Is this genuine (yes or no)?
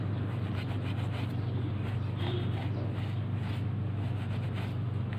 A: yes